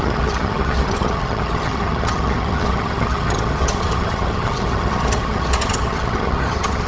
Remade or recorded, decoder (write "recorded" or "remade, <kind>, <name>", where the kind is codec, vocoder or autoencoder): remade, vocoder, HiFi-GAN